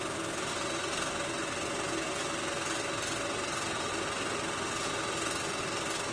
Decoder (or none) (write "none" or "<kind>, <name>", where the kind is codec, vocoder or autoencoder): none